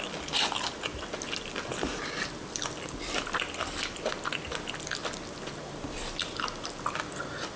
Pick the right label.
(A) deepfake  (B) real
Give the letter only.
B